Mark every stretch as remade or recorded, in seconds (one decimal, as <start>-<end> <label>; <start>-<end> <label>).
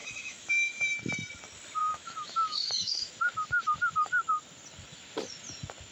0.0-0.9 remade; 0.9-1.8 recorded; 1.8-3.1 remade; 3.1-5.9 recorded